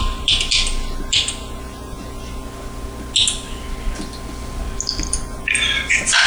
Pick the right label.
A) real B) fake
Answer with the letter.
A